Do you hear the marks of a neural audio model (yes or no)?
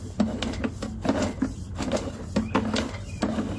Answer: no